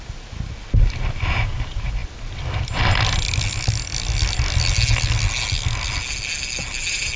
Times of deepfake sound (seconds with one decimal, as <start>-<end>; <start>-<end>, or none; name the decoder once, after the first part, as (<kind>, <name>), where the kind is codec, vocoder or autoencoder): none